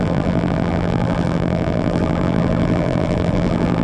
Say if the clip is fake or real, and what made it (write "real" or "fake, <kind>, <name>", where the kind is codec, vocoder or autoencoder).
fake, vocoder, BigVGAN v2